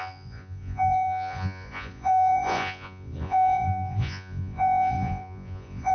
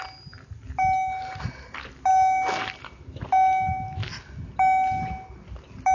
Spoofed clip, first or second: first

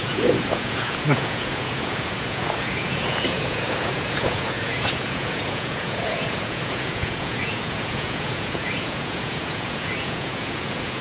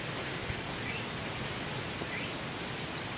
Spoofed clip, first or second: first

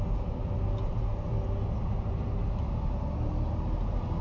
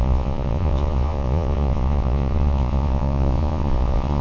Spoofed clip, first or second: second